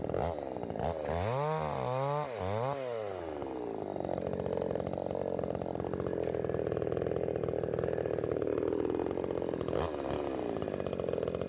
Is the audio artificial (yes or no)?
no